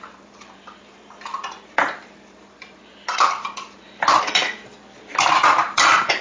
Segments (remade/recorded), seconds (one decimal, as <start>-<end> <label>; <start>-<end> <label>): 0.0-6.2 remade